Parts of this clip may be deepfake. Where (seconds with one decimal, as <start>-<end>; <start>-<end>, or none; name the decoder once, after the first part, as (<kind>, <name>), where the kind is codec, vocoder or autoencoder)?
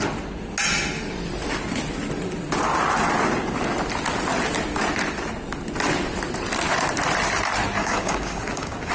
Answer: 7.8-8.9 (codec, DAC)